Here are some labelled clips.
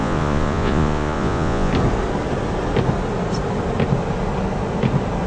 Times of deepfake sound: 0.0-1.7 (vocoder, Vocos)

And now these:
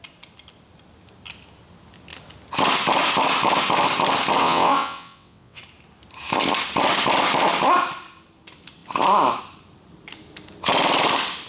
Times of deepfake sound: 4.4-5.6 (vocoder, WaveNeXt)

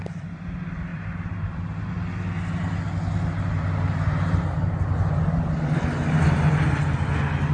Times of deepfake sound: 0.9-1.9 (vocoder, BigVGAN v2)